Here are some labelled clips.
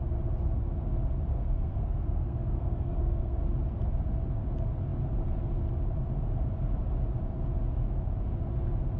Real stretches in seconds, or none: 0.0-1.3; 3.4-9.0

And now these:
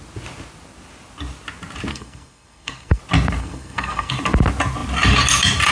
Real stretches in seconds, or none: 0.0-1.9; 3.0-3.4; 4.1-5.7